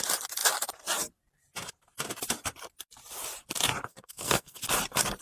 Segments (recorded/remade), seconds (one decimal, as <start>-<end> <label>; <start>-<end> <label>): 0.0-3.9 recorded; 3.9-4.6 remade; 4.6-5.2 recorded

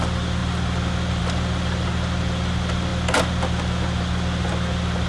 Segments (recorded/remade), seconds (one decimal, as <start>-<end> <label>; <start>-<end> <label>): 0.0-5.1 recorded